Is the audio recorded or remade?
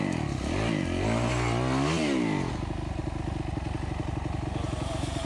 recorded